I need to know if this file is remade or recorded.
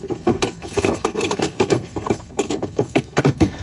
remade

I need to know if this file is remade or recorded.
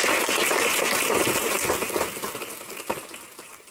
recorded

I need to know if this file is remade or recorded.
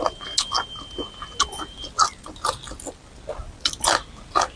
recorded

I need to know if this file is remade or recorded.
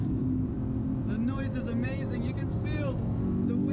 recorded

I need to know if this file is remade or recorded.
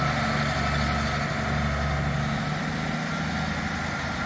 recorded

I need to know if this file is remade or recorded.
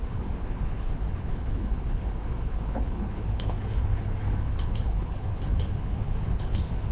remade